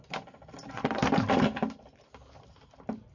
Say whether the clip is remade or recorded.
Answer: recorded